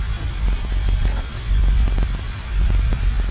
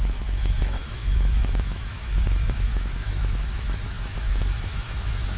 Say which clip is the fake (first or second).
second